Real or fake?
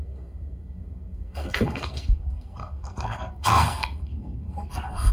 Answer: fake